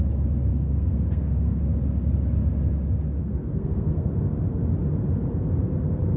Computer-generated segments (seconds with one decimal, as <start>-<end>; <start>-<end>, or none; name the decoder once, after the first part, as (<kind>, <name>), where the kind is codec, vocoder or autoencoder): 0.5-1.6 (codec, SNAC); 3.2-4.1